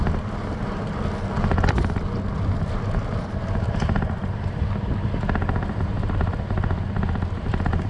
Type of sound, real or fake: real